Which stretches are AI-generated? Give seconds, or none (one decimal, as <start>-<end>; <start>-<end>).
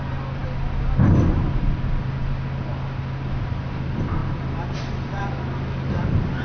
4.2-5.2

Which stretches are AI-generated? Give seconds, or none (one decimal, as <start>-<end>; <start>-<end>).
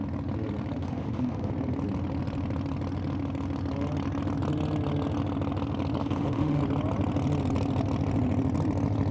0.8-1.5; 6.0-6.6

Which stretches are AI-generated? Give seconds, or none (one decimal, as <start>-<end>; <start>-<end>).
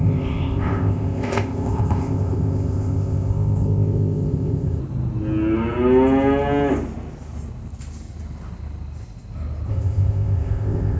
0.0-4.8; 9.7-11.0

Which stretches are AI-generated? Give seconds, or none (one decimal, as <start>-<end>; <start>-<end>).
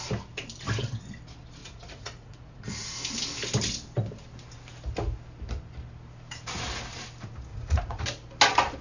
1.6-2.6; 7.5-8.0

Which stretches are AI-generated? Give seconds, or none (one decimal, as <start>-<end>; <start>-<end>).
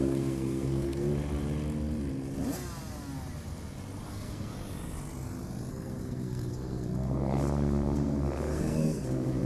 0.0-1.1; 4.1-4.5; 5.7-9.5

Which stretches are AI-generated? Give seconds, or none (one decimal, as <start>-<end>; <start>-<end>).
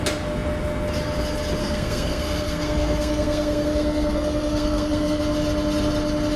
1.6-5.2